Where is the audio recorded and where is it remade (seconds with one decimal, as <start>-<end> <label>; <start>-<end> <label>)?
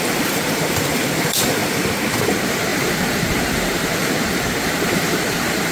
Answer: 0.0-1.6 remade; 1.6-2.1 recorded; 2.1-5.7 remade